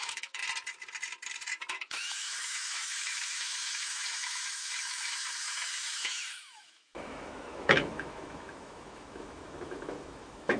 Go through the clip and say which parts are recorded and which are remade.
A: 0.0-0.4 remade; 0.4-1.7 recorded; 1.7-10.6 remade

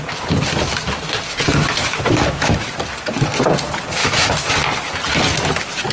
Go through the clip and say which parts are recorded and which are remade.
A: 0.0-1.6 recorded; 1.6-2.7 remade; 2.7-4.0 recorded; 4.0-4.5 remade; 4.5-5.9 recorded